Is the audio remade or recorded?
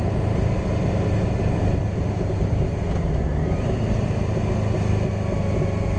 recorded